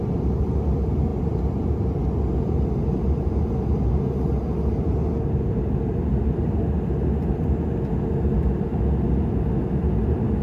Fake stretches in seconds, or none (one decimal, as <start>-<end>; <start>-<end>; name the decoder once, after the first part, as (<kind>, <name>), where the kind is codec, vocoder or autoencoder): none